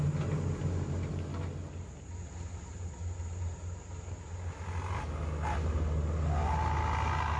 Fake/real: real